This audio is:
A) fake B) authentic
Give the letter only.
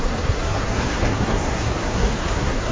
A